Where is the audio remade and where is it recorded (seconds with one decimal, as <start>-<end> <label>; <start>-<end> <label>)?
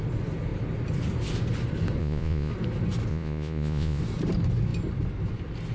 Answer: 0.0-2.0 recorded; 2.0-2.5 remade; 2.5-3.1 recorded; 3.1-4.0 remade; 4.0-5.7 recorded